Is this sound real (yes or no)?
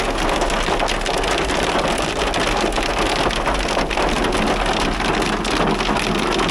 yes